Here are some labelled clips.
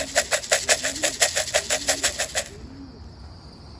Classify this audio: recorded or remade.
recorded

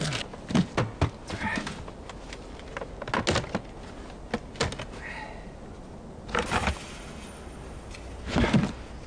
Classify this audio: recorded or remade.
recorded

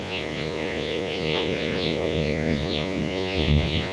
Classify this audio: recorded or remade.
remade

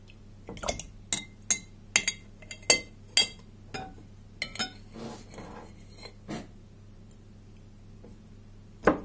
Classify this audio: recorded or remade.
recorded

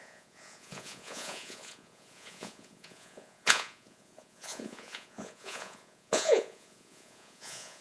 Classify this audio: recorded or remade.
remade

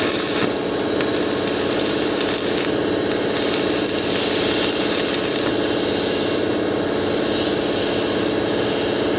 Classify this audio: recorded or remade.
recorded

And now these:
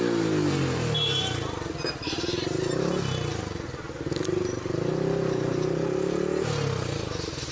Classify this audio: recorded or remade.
recorded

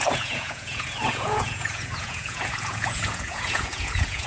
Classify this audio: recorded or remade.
remade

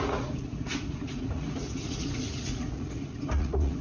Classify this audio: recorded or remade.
remade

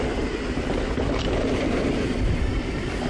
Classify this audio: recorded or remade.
recorded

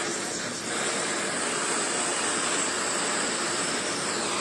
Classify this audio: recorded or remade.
recorded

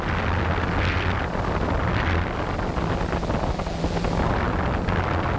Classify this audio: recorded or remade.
recorded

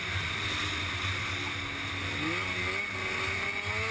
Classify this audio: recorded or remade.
recorded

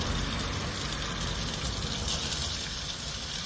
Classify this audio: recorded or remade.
recorded